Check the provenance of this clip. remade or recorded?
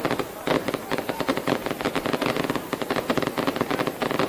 recorded